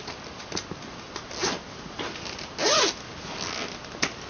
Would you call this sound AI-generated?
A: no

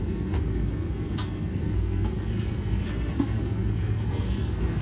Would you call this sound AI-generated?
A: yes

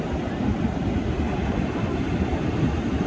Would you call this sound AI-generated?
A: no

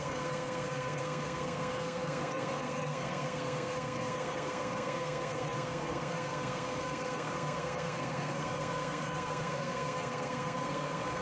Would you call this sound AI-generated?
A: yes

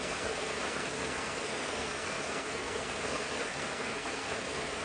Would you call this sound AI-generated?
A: yes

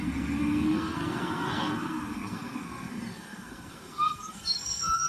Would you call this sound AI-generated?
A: yes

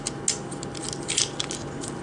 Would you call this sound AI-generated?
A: no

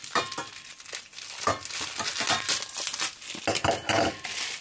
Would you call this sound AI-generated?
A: no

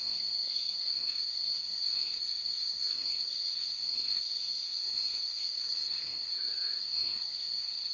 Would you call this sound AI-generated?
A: yes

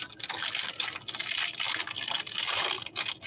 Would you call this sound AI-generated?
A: no